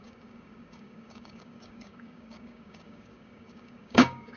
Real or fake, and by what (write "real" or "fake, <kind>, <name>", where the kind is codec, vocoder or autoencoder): fake, codec, DAC